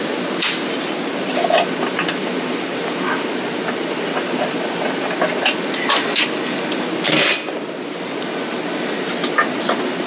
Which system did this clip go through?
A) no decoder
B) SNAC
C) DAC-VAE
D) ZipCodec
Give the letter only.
A